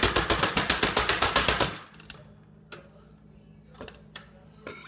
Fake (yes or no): no